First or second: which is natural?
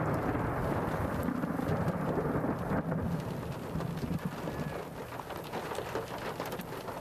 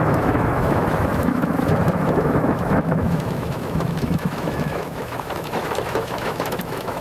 first